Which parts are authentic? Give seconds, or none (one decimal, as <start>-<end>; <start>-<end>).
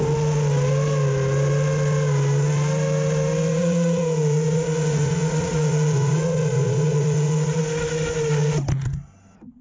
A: 0.0-3.6; 7.6-9.6